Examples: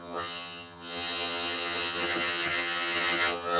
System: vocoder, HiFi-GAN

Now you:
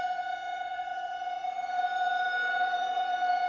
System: vocoder, HiFi-GAN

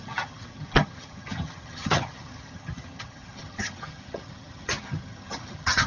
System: vocoder, HiFi-GAN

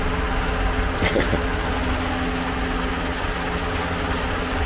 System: none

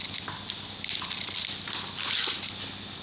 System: none